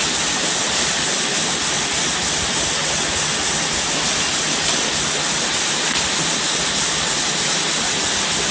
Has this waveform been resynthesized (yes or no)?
no